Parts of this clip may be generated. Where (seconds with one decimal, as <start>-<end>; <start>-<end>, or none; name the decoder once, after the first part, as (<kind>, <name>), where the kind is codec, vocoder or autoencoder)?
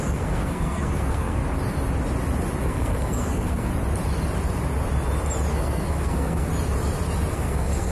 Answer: 0.0-1.4 (codec, SNAC); 2.6-3.7; 5.5-6.5; 7.3-7.9